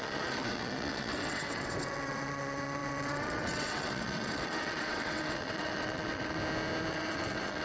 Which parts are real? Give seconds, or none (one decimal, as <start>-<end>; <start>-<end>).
6.4-6.9